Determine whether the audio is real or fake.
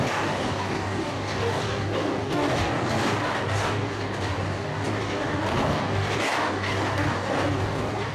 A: fake